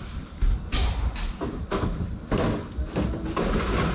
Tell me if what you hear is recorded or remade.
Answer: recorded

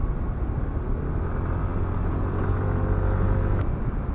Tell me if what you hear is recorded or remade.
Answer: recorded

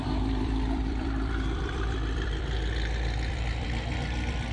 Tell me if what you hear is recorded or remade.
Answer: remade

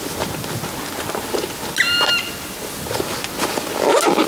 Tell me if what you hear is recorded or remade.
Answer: recorded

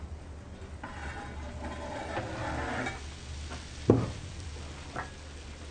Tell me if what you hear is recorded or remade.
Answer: recorded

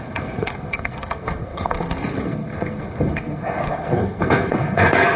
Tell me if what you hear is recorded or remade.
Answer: remade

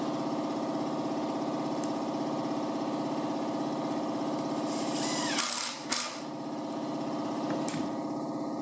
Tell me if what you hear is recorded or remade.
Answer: recorded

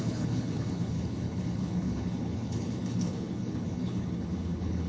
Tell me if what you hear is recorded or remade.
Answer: remade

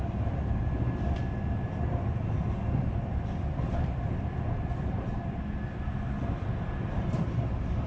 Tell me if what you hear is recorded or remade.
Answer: remade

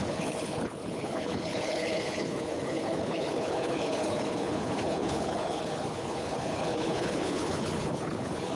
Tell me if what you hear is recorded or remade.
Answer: remade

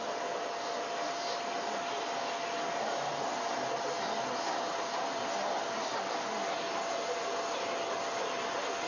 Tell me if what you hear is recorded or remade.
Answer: recorded